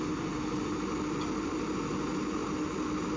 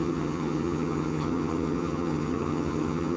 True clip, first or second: first